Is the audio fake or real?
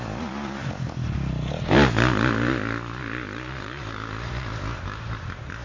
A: real